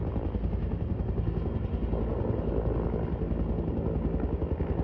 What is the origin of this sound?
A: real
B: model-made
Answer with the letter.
A